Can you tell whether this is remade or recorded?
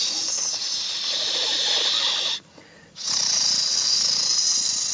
recorded